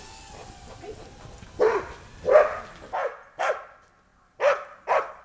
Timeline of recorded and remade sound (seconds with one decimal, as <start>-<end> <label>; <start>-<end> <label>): 0.0-5.2 recorded